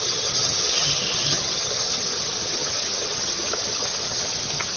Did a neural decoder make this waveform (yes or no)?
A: yes